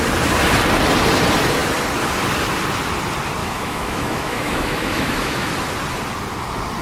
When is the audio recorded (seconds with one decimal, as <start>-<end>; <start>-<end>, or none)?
0.0-3.4; 5.5-6.8

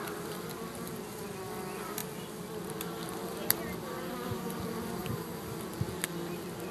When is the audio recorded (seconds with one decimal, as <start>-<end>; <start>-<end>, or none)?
0.0-5.0; 5.5-6.7

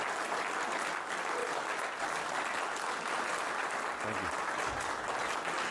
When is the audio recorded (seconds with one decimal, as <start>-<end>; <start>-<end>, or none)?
0.0-5.7

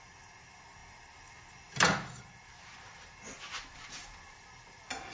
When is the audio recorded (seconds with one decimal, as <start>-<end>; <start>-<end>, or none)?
0.0-5.1

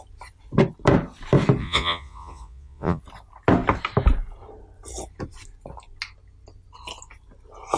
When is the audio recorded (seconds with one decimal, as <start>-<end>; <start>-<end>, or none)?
0.0-1.6; 3.0-7.8

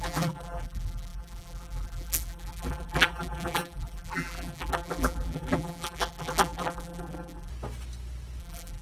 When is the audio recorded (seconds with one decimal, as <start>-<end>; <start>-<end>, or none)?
7.5-8.4